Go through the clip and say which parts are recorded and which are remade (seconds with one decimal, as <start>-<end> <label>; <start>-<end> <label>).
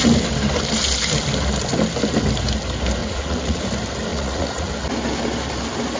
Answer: 0.0-3.0 recorded; 3.0-3.6 remade; 3.6-4.1 recorded; 4.1-4.7 remade; 4.7-6.0 recorded